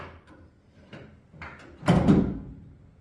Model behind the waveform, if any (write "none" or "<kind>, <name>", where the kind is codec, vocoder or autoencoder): vocoder, BigVGAN v2